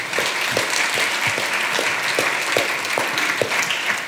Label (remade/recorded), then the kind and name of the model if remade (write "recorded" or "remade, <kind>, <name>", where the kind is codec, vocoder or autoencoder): recorded